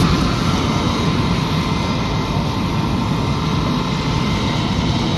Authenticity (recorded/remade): recorded